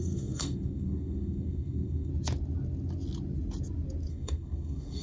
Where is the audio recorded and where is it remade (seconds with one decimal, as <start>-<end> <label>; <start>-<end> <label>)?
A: 0.0-2.1 remade; 2.1-4.1 recorded; 4.1-5.0 remade